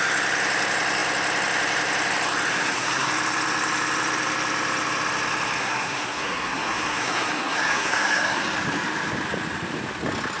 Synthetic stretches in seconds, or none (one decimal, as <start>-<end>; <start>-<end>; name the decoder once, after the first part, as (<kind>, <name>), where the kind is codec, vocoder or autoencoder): 2.5-3.1 (codec, SNAC); 5.6-8.4